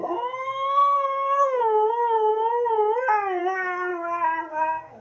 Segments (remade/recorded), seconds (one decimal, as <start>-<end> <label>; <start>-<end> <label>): 0.0-2.3 remade; 2.3-3.4 recorded; 3.4-3.9 remade; 3.9-4.5 recorded; 4.5-5.0 remade